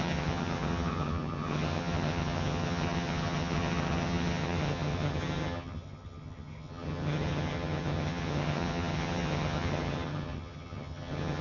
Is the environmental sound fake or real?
fake